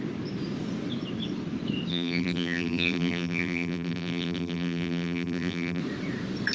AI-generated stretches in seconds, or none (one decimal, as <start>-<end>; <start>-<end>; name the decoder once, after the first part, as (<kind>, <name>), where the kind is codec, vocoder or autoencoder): 1.9-5.8 (vocoder, BigVGAN v2)